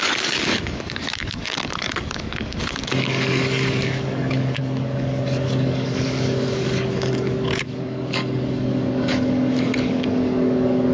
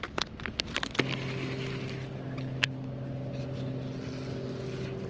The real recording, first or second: second